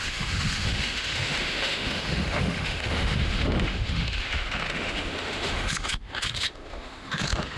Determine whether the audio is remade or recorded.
remade